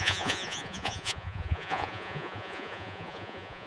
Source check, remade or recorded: remade